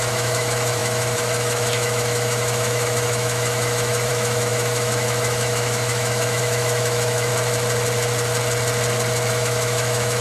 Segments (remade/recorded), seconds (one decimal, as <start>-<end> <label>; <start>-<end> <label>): 0.0-7.3 remade; 7.3-9.3 recorded; 9.3-10.2 remade